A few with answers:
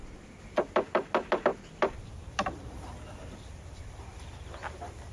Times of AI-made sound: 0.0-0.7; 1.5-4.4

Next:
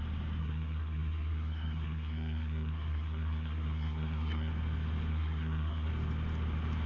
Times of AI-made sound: 0.4-4.5; 5.1-5.9

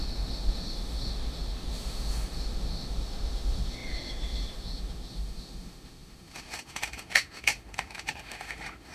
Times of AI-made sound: 0.0-8.9

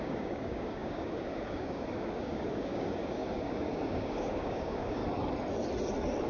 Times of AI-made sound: 0.0-5.0

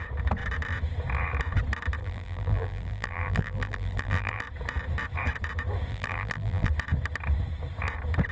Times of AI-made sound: 2.0-4.4; 5.9-6.7